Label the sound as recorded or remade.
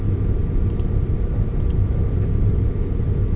remade